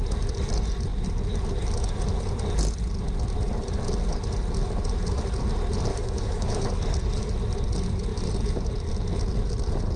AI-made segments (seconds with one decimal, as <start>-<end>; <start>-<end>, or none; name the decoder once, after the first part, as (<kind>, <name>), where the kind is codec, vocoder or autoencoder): 5.9-6.5 (autoencoder, DAC-VAE)